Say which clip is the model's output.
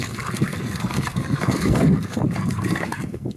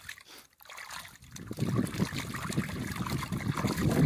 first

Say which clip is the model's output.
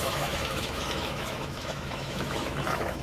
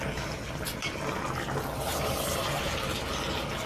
first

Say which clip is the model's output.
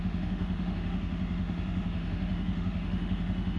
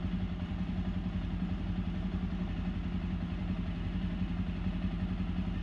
first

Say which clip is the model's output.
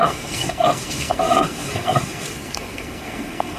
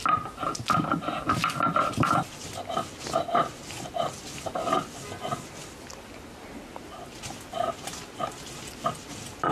first